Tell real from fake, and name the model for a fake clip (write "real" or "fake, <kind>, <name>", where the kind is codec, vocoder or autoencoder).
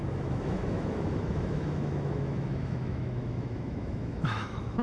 fake, autoencoder, DAC-VAE